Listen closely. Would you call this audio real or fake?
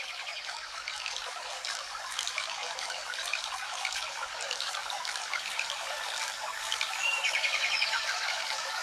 fake